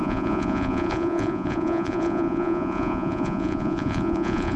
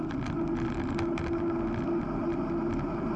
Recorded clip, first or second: second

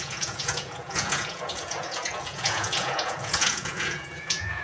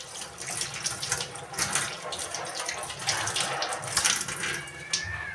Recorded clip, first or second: second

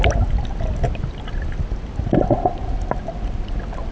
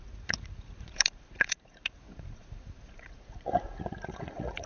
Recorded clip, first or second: first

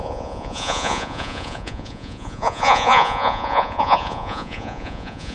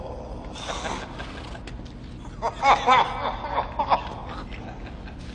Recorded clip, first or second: second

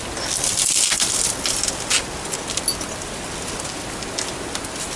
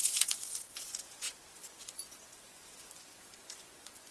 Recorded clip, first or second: first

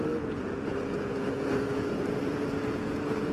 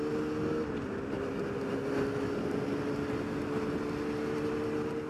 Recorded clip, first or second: second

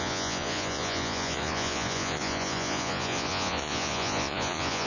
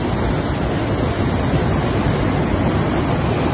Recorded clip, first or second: second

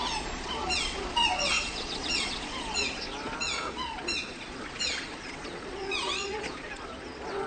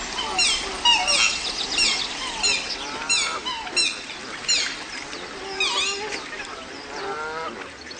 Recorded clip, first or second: second